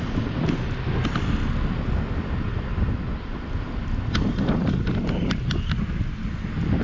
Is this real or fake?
real